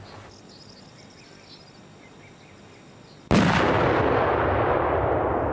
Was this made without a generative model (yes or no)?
yes